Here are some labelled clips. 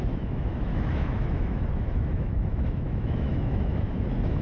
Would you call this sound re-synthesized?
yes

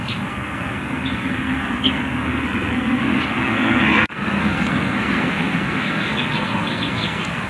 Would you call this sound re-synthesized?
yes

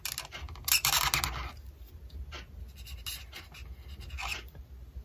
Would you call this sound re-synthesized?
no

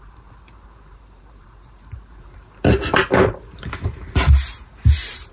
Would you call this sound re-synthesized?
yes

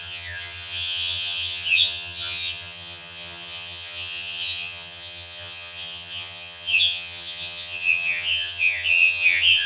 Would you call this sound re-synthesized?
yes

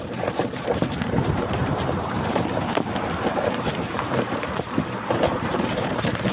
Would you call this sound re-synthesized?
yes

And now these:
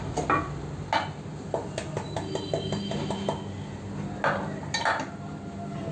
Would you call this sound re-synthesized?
no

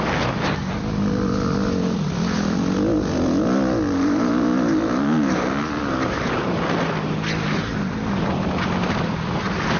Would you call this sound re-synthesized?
no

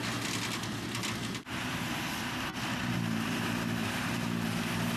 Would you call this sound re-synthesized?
no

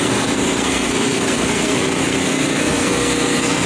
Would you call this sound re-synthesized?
yes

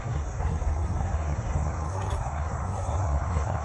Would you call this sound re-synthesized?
yes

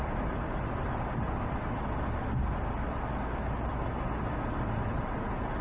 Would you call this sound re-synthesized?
no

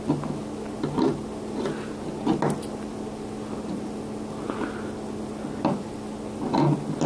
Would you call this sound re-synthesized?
no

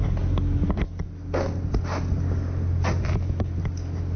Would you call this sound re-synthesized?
no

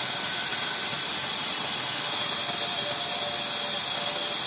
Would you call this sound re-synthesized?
no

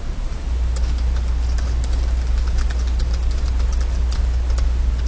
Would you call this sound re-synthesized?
no